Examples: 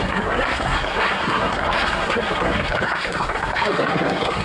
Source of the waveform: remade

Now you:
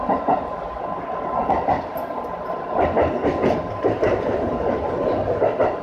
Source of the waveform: recorded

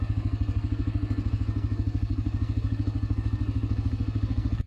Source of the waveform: remade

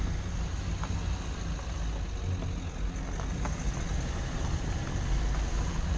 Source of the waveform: recorded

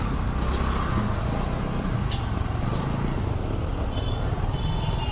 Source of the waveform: recorded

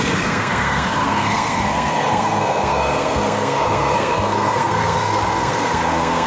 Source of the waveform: remade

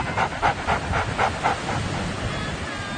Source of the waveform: recorded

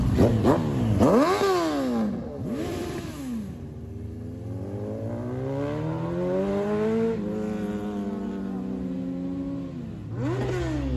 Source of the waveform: recorded